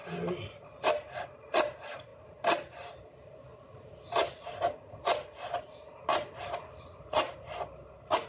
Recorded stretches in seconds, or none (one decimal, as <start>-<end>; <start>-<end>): 0.0-8.3